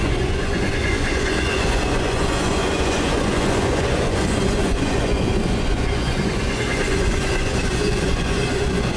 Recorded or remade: remade